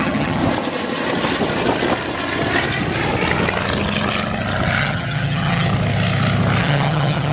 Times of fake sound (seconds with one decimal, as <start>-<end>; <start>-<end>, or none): 0.0-0.4; 4.8-5.7; 6.6-7.3